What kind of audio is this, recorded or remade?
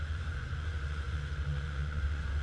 remade